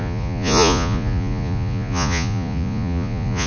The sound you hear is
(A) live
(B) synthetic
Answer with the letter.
B